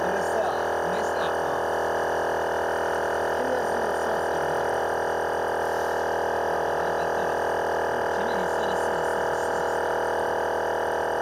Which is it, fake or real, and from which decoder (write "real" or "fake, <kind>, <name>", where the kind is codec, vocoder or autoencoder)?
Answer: real